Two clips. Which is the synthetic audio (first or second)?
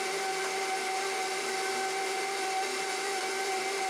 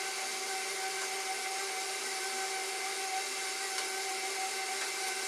first